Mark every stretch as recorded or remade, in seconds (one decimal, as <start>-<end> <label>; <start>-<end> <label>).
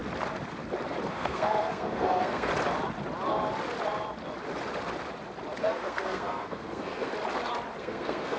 0.0-1.1 recorded; 1.1-2.5 remade; 2.5-5.6 recorded; 5.6-7.1 remade; 7.1-7.8 recorded; 7.8-8.4 remade